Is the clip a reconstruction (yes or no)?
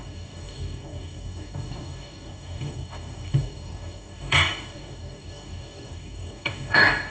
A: yes